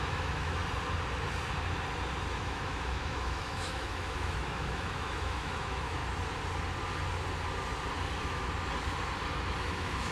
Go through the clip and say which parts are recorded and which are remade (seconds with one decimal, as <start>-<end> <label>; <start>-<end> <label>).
0.0-0.6 remade; 0.6-2.3 recorded; 2.3-6.0 remade; 6.0-9.6 recorded; 9.6-10.1 remade